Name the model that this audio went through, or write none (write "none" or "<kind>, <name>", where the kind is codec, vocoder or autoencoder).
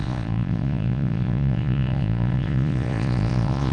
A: vocoder, Vocos